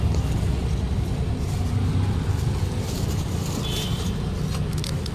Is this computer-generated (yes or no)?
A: no